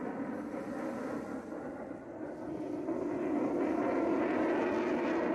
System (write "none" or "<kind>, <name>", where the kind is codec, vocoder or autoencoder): none